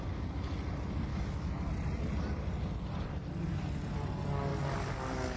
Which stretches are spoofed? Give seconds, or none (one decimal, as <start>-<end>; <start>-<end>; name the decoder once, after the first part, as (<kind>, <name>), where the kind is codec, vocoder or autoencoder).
1.1-1.7 (autoencoder, DAC-VAE)